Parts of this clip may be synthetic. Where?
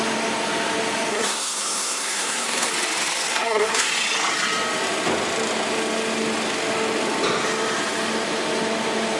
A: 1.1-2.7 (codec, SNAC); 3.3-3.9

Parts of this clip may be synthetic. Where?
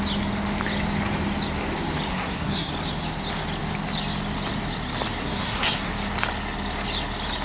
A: 2.1-2.7 (codec, SNAC); 5.2-5.9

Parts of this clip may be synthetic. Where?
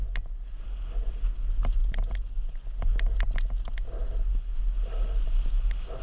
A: none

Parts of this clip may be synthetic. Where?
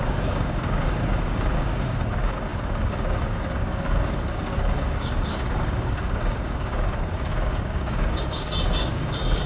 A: 0.0-9.5 (codec, DAC)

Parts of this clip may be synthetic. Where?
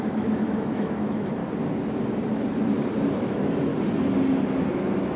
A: 0.0-1.4 (autoencoder, DAC-VAE); 3.2-3.7; 4.7-5.2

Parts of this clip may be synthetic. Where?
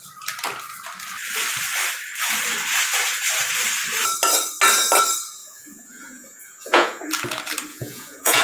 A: 5.4-7.1 (vocoder, Vocos); 7.7-8.4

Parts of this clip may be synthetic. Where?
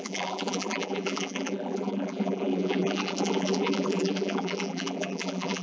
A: 0.0-5.6 (vocoder, BigVGAN v2)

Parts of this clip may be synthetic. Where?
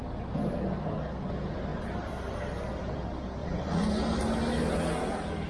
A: 3.4-4.0 (vocoder, Vocos)